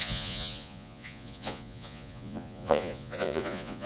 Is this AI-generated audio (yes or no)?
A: yes